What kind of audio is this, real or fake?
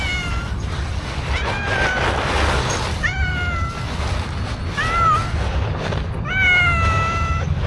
real